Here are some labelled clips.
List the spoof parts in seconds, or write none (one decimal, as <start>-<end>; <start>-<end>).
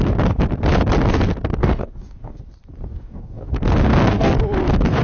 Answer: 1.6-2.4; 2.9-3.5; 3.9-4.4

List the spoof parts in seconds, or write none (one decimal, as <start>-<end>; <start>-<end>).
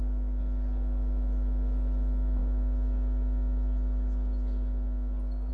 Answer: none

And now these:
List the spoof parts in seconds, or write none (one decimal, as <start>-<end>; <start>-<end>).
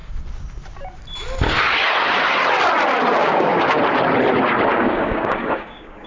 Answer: 3.2-3.8; 4.7-6.1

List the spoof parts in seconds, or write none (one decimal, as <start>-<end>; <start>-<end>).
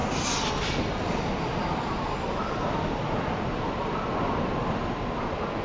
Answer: none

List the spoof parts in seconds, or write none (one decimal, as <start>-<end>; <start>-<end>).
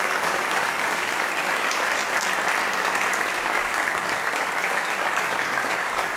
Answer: 0.0-2.0; 2.7-6.2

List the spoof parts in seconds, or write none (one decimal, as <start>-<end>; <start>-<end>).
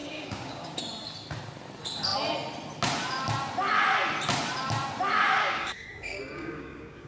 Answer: 0.0-0.8; 5.4-7.1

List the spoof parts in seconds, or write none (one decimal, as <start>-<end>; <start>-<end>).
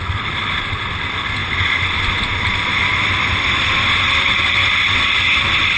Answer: none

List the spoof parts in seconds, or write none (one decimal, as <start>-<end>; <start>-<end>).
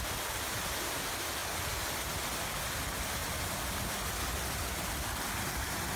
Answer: none